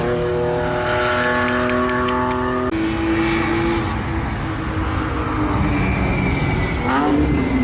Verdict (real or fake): real